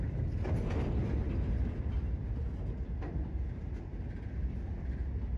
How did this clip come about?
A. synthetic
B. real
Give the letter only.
B